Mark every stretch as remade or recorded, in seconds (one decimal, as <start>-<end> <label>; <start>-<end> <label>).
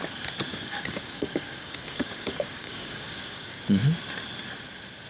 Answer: 0.0-0.5 recorded; 0.5-3.6 remade; 3.6-5.1 recorded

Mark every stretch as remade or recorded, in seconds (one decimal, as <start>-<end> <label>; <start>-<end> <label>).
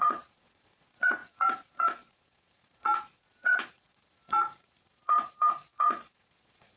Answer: 0.0-6.8 remade